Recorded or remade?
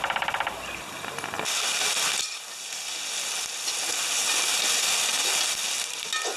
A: recorded